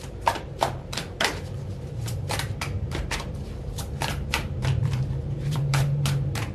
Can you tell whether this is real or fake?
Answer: fake